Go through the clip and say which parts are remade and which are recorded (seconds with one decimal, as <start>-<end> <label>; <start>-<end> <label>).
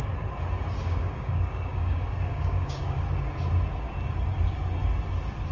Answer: 0.0-0.8 recorded; 0.8-3.0 remade; 3.0-5.5 recorded